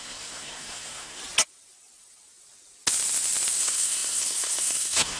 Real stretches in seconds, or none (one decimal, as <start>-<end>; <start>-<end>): 1.2-3.6